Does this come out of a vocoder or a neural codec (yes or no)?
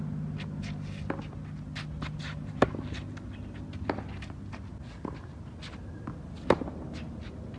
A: no